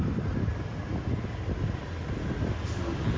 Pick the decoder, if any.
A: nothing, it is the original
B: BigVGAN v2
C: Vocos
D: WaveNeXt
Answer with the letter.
A